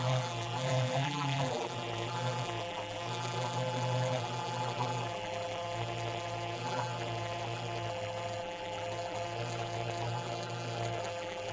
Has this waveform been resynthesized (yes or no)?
yes